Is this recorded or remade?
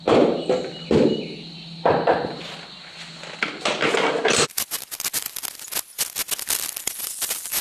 recorded